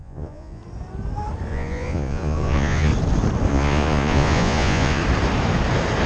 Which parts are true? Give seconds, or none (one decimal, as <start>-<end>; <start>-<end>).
0.6-1.5; 2.9-3.5; 5.0-6.1